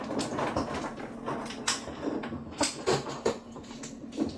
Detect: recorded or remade recorded